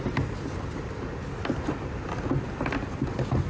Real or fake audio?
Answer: real